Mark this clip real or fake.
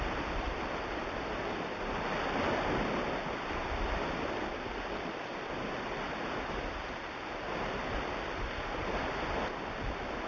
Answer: real